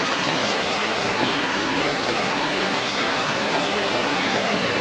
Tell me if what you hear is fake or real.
fake